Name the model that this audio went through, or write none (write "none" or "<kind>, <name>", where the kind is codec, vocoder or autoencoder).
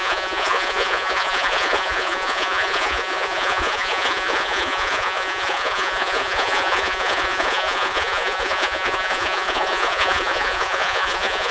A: vocoder, Vocos